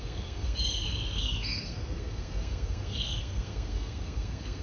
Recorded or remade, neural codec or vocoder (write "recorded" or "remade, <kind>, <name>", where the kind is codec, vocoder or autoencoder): remade, codec, SNAC